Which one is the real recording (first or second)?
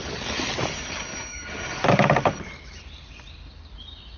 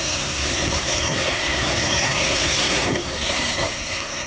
first